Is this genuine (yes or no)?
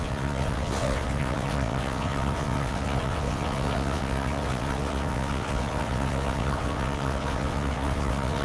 no